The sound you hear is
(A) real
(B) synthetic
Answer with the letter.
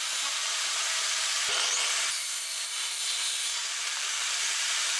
B